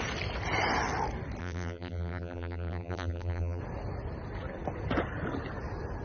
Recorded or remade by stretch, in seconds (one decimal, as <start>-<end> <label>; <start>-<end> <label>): 0.0-1.4 recorded; 1.4-3.6 remade; 3.6-6.0 recorded